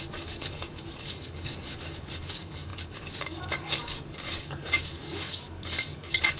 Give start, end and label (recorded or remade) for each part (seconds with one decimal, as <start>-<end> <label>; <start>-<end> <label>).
0.0-6.4 remade